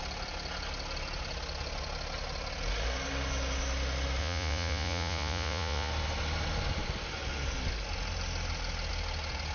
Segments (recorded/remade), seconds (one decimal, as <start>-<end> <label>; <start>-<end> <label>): 0.0-4.2 recorded; 4.2-5.9 remade; 5.9-9.5 recorded